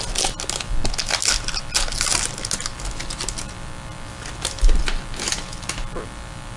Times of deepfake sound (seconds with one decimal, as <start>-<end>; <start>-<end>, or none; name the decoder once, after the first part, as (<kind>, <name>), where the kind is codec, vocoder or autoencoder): none